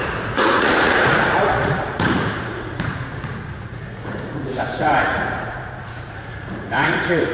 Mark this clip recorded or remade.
remade